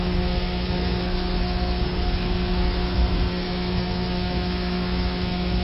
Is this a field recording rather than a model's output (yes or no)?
no